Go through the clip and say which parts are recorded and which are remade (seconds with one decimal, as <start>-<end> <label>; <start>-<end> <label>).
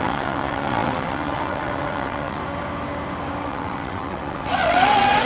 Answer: 0.0-2.4 remade; 2.4-3.4 recorded; 3.4-5.3 remade